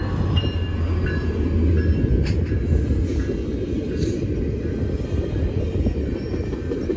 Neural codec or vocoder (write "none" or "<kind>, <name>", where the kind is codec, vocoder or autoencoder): none